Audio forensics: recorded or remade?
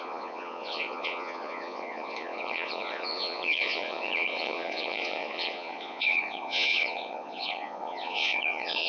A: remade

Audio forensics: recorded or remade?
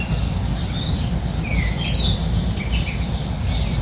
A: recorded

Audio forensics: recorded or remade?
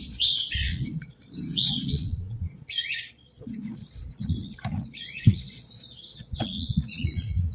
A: remade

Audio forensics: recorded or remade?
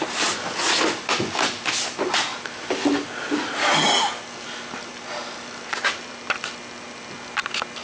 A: recorded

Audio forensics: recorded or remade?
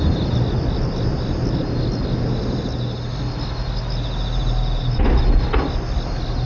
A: recorded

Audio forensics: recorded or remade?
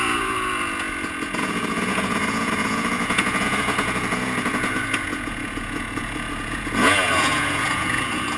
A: remade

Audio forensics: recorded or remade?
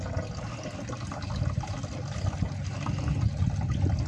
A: recorded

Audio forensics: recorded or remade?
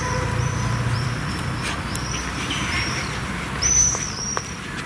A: remade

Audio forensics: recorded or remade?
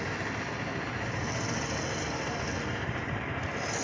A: recorded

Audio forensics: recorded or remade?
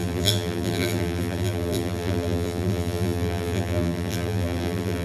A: remade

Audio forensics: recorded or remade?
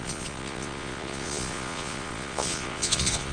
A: remade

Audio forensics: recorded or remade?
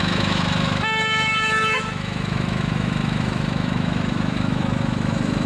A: remade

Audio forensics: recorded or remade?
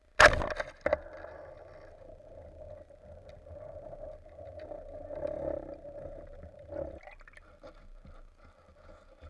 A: recorded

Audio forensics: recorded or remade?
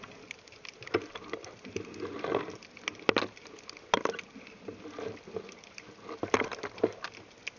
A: recorded